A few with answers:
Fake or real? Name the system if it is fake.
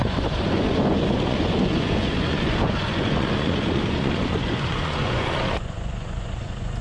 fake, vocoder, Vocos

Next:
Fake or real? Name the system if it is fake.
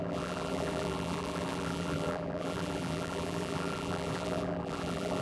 fake, vocoder, BigVGAN v2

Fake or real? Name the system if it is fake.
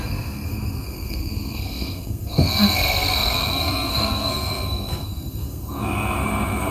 fake, codec, SNAC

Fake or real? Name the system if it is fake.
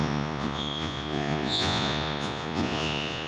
fake, vocoder, Vocos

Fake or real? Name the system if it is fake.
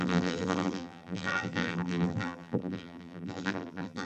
fake, vocoder, BigVGAN v2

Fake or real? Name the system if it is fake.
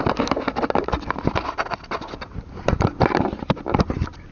real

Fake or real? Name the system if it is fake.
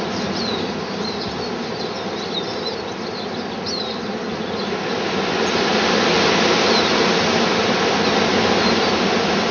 real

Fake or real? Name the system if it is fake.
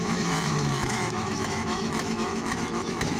fake, autoencoder, DAC-VAE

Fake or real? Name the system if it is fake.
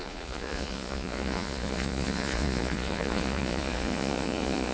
fake, vocoder, Vocos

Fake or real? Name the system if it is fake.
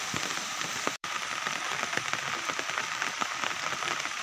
fake, vocoder, BigVGAN v2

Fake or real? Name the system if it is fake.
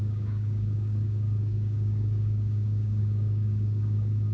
fake, codec, DAC